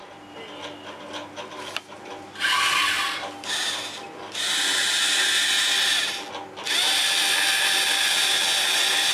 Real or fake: real